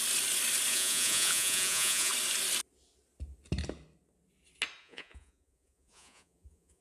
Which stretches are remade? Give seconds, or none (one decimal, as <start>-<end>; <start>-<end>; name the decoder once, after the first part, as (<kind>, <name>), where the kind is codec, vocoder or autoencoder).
0.7-2.1 (vocoder, Vocos); 4.8-6.8